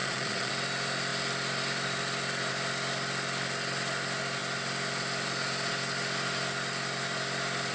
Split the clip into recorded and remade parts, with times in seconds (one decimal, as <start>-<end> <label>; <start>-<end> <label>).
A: 0.0-0.5 remade; 0.5-7.7 recorded